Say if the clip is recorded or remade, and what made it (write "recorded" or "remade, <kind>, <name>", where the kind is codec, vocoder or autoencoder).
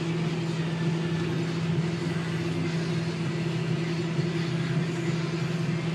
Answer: recorded